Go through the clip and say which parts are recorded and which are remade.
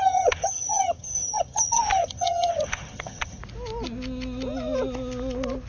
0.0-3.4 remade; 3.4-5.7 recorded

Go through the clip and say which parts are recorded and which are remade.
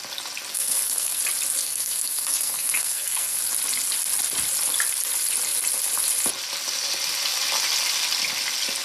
0.0-0.5 recorded; 0.5-1.2 remade; 1.2-1.6 recorded; 1.6-3.4 remade; 3.4-8.8 recorded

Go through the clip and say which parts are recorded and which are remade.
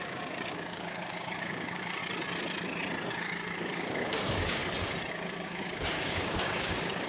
0.0-2.0 remade; 2.0-3.1 recorded; 3.1-4.6 remade; 4.6-5.1 recorded; 5.1-7.1 remade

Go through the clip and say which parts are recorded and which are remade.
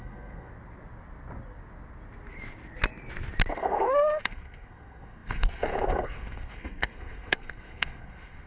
0.0-0.5 remade; 0.5-3.5 recorded; 3.5-8.5 remade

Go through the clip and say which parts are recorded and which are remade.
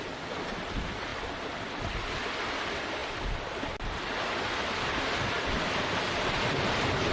0.0-7.1 recorded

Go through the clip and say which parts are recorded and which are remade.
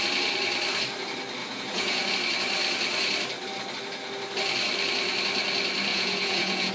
0.0-1.4 recorded; 1.4-2.1 remade; 2.1-5.9 recorded; 5.9-6.7 remade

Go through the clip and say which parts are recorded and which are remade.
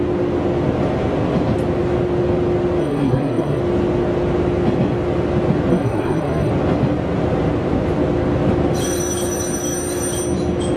0.0-2.8 recorded; 2.8-3.6 remade; 3.6-5.7 recorded; 5.7-6.5 remade; 6.5-10.8 recorded